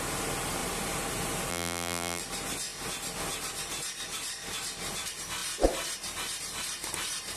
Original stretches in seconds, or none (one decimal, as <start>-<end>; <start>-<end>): 0.0-1.5; 2.2-7.4